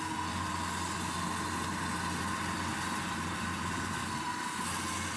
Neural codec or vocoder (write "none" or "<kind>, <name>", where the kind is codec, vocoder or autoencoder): none